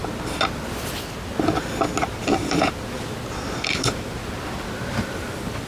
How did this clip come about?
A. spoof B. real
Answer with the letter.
B